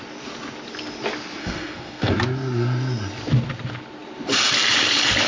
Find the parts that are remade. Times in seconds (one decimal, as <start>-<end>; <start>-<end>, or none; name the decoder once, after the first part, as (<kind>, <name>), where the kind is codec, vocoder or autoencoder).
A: 1.4-2.1 (codec, SNAC)